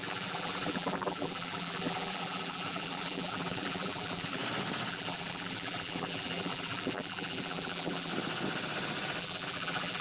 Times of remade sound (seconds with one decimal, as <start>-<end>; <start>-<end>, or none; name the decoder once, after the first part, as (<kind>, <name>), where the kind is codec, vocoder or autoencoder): 0.0-4.4 (vocoder, BigVGAN v2); 4.9-8.1; 9.2-10.0